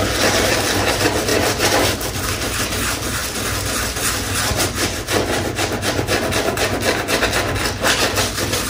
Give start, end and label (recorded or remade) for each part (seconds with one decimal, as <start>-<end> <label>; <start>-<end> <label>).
0.0-8.7 recorded